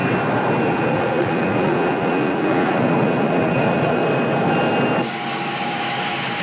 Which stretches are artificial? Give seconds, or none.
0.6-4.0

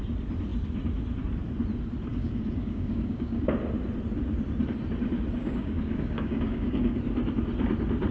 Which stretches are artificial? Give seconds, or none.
2.1-3.5; 5.4-7.0

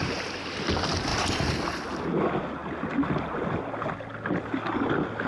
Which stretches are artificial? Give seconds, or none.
none

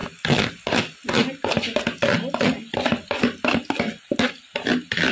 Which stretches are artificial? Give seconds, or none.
none